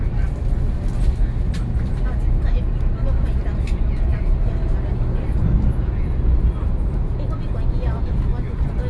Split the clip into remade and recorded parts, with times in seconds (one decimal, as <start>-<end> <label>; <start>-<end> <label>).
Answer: 0.0-8.9 recorded